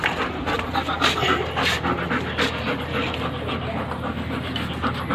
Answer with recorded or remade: remade